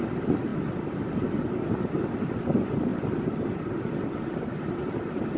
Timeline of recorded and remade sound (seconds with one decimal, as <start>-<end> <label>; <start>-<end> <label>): 0.0-5.4 recorded